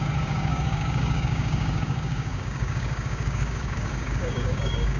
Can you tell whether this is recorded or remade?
remade